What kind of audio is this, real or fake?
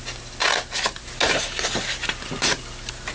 real